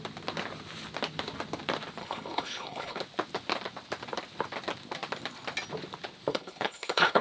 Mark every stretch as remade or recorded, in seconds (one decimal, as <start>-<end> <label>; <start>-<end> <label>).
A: 0.0-2.0 recorded; 2.0-3.0 remade; 3.0-6.3 recorded; 6.3-7.2 remade